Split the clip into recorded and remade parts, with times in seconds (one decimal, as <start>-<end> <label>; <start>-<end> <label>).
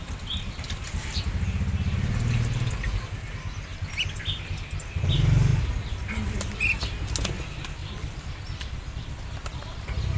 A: 0.0-3.7 recorded; 3.7-4.2 remade; 4.2-7.8 recorded; 7.8-9.5 remade; 9.5-10.2 recorded